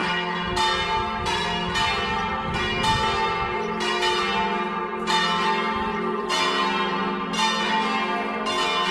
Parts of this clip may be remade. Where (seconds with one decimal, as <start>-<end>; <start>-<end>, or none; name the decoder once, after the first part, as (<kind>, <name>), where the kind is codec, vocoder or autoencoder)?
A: 5.9-7.0 (vocoder, BigVGAN v2)